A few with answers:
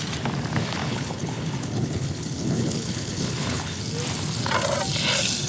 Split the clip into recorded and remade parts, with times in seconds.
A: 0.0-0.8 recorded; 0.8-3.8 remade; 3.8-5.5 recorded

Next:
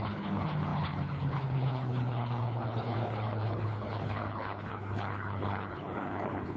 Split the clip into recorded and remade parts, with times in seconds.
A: 0.0-6.6 remade

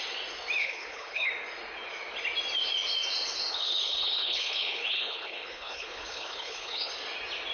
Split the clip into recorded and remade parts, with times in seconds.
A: 0.0-0.6 recorded; 0.6-1.3 remade; 1.3-3.5 recorded; 3.5-6.9 remade; 6.9-7.5 recorded

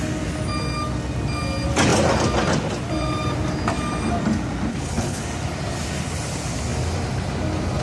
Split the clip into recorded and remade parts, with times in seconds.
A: 0.0-4.7 recorded; 4.7-5.2 remade; 5.2-7.8 recorded

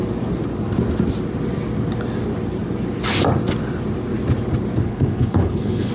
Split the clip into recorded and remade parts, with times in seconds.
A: 0.0-4.8 recorded; 4.8-5.9 remade

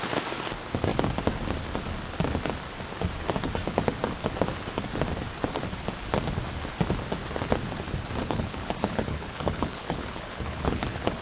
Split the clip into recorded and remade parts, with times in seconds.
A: 0.0-8.2 recorded; 8.2-11.2 remade

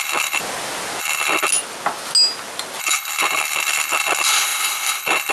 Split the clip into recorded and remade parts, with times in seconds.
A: 0.0-0.4 remade; 0.4-1.0 recorded; 1.0-1.5 remade; 1.5-2.8 recorded; 2.8-5.3 remade

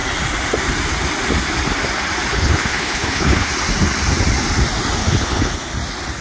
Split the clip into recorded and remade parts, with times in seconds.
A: 0.0-2.3 recorded; 2.3-3.5 remade; 3.5-5.0 recorded; 5.0-5.5 remade; 5.5-6.2 recorded